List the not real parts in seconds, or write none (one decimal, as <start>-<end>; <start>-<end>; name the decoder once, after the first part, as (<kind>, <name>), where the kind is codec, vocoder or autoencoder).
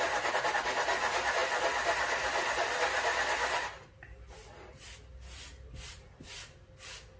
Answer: none